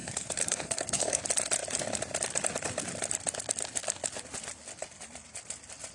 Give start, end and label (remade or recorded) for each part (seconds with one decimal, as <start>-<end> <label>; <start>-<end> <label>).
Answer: 0.0-1.2 remade; 1.2-5.9 recorded